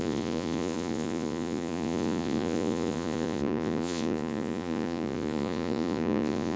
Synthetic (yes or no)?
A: yes